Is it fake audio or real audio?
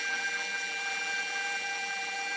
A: fake